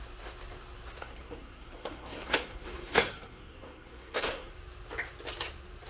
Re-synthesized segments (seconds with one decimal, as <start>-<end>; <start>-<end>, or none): 1.0-4.5